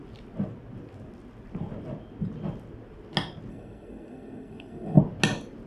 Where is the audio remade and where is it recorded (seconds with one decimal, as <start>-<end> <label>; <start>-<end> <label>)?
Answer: 0.0-3.5 recorded; 3.5-5.0 remade; 5.0-5.7 recorded